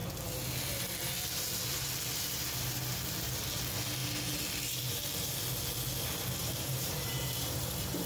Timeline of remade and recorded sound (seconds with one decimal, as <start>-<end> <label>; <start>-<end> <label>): 0.0-6.4 recorded; 6.4-8.1 remade